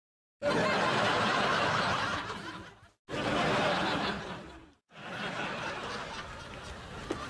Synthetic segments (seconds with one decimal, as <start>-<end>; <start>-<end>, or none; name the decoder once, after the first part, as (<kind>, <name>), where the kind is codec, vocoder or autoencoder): none